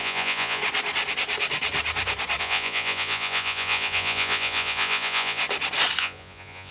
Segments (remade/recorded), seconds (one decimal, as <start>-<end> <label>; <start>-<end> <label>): 0.0-0.6 remade; 0.6-2.4 recorded; 2.4-5.4 remade; 5.4-6.0 recorded; 6.0-6.7 remade